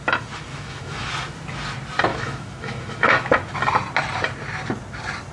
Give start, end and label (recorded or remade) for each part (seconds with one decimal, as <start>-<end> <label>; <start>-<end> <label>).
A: 0.0-0.5 recorded; 0.5-1.1 remade; 1.1-2.1 recorded; 2.1-3.3 remade; 3.3-5.3 recorded